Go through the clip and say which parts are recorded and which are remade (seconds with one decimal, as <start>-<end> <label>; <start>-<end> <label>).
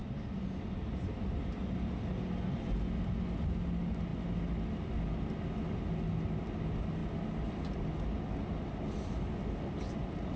0.0-10.4 recorded